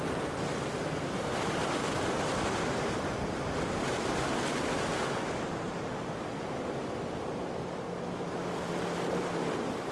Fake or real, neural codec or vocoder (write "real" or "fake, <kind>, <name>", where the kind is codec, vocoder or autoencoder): real